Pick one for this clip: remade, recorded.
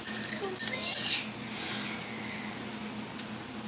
recorded